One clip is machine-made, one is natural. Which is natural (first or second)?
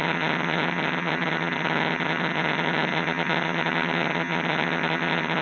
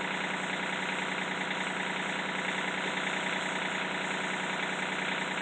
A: second